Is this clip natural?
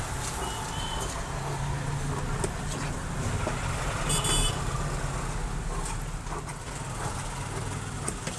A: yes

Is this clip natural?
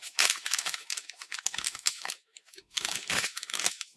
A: no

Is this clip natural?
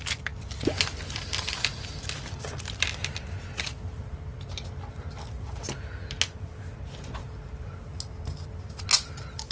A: yes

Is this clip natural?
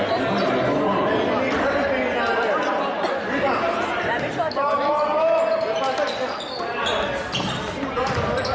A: yes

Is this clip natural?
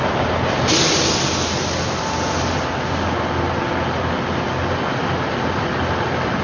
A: yes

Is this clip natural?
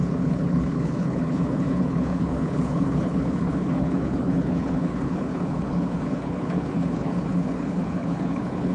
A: no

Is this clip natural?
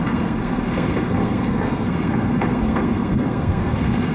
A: no